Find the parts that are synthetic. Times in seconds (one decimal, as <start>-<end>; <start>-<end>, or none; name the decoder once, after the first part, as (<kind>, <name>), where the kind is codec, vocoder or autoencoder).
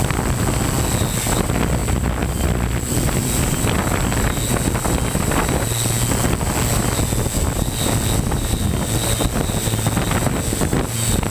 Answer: none